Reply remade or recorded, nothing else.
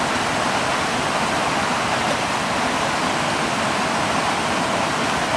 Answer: recorded